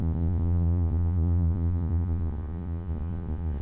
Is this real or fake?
fake